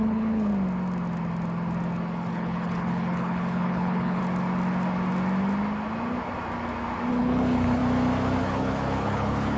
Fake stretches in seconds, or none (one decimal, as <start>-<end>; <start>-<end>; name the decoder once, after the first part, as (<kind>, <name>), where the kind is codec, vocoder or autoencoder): 0.0-0.5 (codec, HILCodec); 2.3-4.2; 7.1-7.8; 8.4-9.6